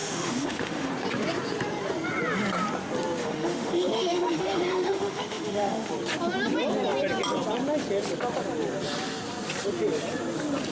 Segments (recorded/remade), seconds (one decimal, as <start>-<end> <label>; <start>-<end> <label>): 0.0-0.9 remade; 0.9-3.2 recorded; 3.2-5.9 remade; 5.9-10.7 recorded